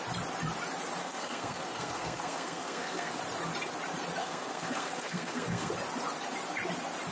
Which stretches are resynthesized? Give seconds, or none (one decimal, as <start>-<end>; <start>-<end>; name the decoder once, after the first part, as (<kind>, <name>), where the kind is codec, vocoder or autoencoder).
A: 1.0-3.2 (codec, SNAC); 4.2-5.7